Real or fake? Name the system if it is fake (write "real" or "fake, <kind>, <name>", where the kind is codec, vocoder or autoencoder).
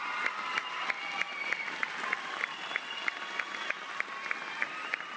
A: real